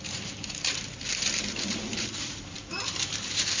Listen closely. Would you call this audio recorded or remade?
remade